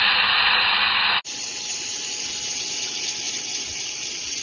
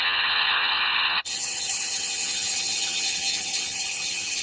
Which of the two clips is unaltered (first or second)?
first